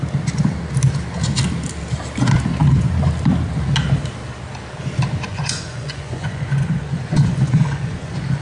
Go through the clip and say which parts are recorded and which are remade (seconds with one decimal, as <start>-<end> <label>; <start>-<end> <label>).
0.0-5.3 recorded; 5.3-8.4 remade